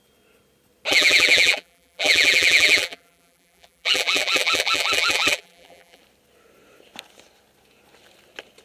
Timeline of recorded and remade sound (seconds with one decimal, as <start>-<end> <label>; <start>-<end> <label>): 0.0-0.9 recorded; 0.9-6.0 remade; 6.0-8.6 recorded